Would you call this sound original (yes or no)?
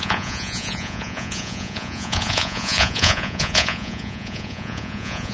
no